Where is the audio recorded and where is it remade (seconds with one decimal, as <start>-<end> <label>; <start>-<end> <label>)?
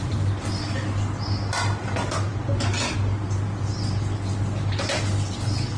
0.0-5.8 recorded